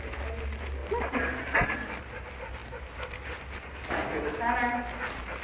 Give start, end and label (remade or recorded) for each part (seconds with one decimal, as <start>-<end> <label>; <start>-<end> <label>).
0.0-5.4 recorded